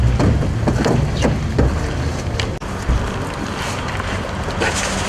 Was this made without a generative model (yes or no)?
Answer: yes